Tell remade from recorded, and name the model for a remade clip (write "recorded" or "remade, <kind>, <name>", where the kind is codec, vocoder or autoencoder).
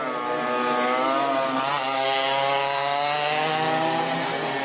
recorded